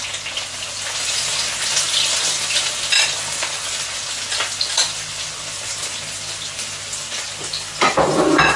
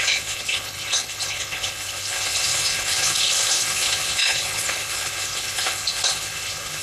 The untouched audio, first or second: first